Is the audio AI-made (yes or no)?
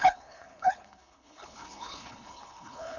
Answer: yes